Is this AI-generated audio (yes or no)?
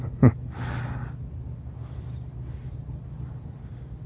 no